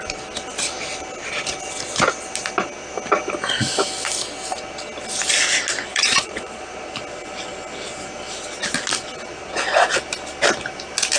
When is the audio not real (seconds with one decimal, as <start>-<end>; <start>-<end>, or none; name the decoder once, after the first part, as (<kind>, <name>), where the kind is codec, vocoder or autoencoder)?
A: 5.9-6.9 (vocoder, Vocos); 9.4-9.9